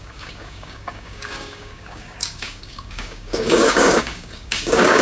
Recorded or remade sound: remade